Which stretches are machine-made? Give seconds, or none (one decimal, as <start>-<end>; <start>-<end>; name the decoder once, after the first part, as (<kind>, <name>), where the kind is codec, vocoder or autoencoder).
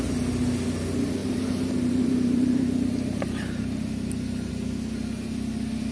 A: 1.2-4.5 (vocoder, BigVGAN v2)